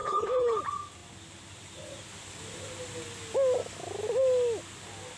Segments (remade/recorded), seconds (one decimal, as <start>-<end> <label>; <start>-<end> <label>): 0.0-0.6 remade; 0.6-5.2 recorded